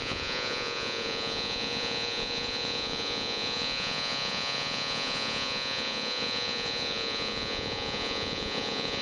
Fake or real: fake